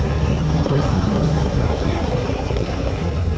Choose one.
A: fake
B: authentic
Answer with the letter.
A